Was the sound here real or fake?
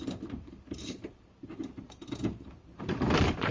fake